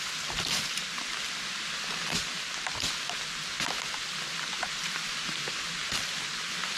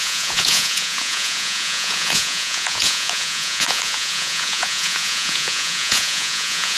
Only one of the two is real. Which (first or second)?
first